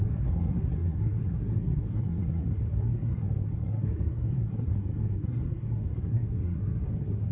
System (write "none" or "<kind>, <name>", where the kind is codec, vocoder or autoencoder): codec, SNAC